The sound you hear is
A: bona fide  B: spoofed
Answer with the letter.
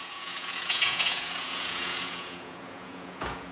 B